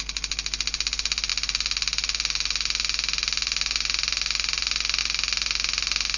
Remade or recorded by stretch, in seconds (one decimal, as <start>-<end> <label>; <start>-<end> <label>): 0.0-6.2 recorded

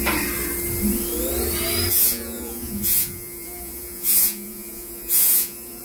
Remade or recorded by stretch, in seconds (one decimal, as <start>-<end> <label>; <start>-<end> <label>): 0.0-1.9 recorded; 1.9-5.8 remade

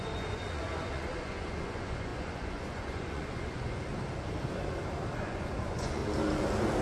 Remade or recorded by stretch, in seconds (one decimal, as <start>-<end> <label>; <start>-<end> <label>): 0.0-3.9 remade; 3.9-5.2 recorded; 5.2-6.0 remade; 6.0-6.8 recorded

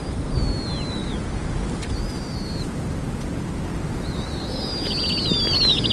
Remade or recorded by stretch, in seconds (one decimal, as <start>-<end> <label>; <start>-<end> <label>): 0.0-5.9 recorded

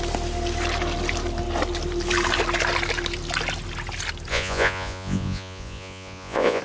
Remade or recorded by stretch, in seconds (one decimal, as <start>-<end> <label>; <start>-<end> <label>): 0.0-4.3 recorded; 4.3-6.6 remade

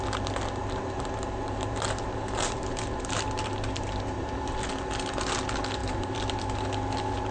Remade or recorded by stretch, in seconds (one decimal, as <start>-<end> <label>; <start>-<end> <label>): 0.0-0.6 recorded; 0.6-4.6 remade; 4.6-5.8 recorded; 5.8-6.4 remade; 6.4-7.3 recorded

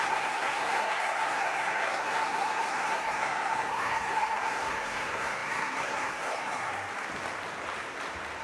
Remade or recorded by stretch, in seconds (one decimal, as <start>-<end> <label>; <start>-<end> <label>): 0.0-6.7 remade; 6.7-8.4 recorded